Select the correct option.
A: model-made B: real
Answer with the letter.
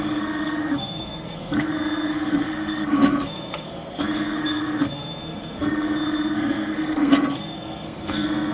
A